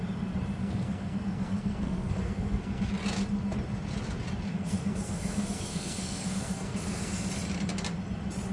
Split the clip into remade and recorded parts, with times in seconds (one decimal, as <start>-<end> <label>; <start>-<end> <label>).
0.0-0.6 recorded; 0.6-2.9 remade; 2.9-4.5 recorded; 4.5-7.3 remade; 7.3-8.5 recorded